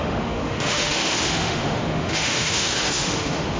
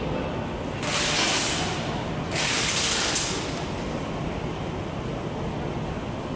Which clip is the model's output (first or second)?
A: first